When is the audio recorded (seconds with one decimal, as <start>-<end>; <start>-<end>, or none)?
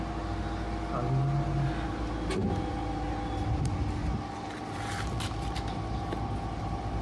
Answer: 0.0-7.0